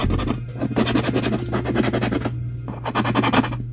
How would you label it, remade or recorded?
recorded